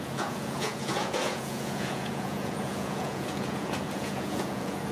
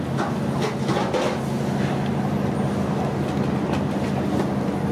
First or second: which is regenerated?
first